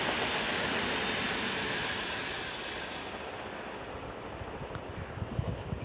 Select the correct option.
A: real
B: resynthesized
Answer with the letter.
A